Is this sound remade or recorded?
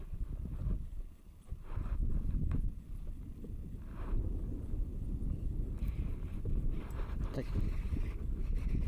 remade